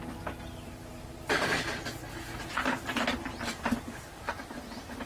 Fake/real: real